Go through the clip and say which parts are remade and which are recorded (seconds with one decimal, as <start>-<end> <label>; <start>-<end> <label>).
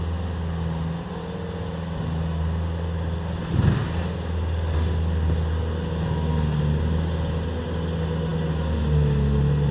0.0-9.7 recorded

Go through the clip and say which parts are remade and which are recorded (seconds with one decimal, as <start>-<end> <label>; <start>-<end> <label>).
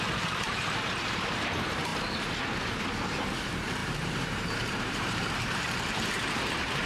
0.0-1.9 remade; 1.9-3.2 recorded; 3.2-6.9 remade